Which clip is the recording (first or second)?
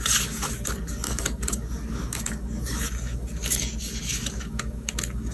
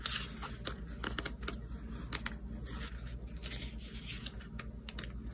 second